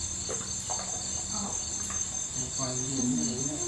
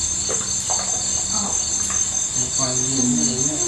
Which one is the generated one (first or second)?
first